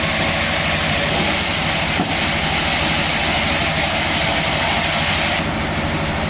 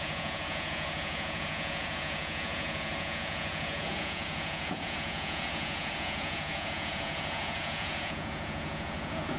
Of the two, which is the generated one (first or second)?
second